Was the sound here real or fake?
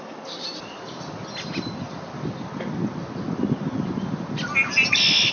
real